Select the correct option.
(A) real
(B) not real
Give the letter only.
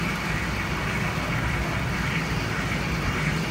A